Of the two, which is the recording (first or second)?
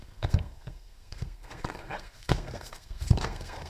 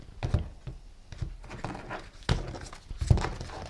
second